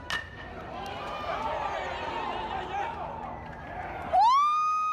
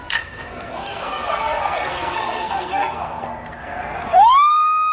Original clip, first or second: first